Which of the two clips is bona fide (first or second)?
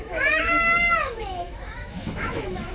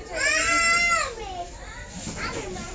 second